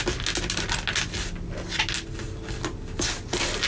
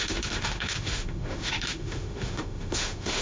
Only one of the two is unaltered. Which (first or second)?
first